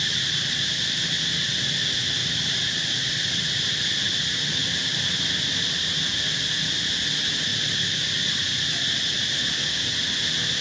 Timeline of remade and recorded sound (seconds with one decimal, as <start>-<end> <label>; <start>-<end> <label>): 0.0-2.2 recorded; 2.2-4.2 remade; 4.2-4.7 recorded; 4.7-5.3 remade; 5.3-10.6 recorded